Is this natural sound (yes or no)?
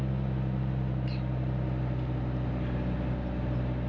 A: yes